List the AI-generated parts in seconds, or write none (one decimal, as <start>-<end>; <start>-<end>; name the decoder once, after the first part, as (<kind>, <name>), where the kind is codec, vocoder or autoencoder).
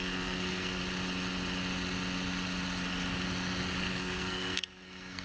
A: 0.0-0.8 (codec, SNAC); 3.9-5.2